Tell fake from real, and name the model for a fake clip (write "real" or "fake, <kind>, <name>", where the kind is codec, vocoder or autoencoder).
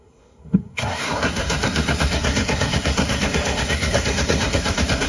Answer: fake, codec, SNAC